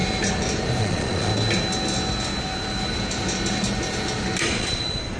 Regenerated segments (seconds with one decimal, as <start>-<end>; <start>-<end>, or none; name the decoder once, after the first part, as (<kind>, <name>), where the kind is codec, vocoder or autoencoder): 0.8-1.3 (vocoder, Vocos); 4.4-5.2